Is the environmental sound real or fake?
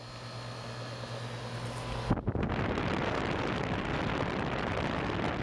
real